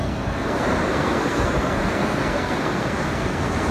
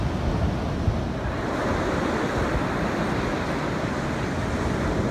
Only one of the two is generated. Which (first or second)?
first